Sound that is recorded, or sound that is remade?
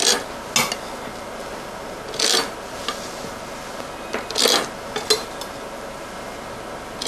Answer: recorded